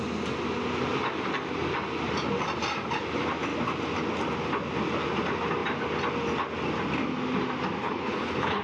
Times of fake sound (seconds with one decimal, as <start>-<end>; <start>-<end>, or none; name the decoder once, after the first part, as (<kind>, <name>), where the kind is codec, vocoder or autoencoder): 7.8-8.6 (codec, HILCodec)